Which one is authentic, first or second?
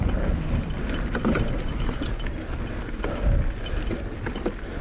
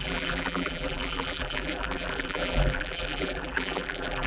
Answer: first